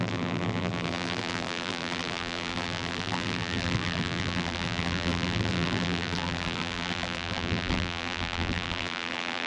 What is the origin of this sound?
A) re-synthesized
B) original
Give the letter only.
A